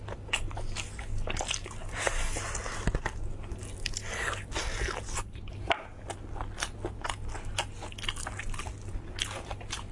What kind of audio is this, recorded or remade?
recorded